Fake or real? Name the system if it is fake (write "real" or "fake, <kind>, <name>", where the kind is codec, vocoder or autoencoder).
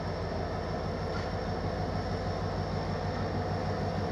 real